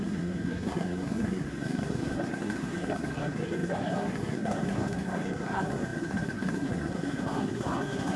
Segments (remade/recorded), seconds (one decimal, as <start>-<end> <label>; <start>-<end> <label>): 0.0-8.2 remade

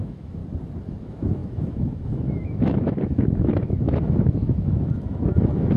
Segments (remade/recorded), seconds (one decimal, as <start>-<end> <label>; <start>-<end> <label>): 0.0-0.4 remade; 0.4-1.0 recorded; 1.0-5.8 remade